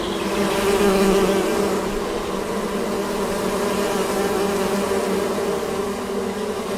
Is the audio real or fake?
real